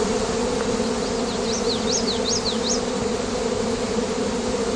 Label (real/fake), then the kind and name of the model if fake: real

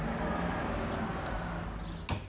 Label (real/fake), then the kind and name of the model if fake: real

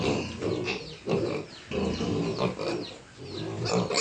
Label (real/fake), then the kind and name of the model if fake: real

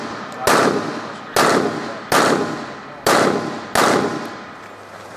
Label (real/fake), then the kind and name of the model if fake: real